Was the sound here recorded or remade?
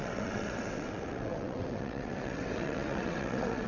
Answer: remade